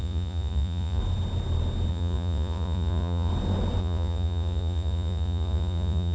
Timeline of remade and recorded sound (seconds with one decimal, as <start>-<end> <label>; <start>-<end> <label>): 0.0-1.0 remade; 1.0-1.9 recorded; 1.9-3.3 remade; 3.3-3.8 recorded; 3.8-6.1 remade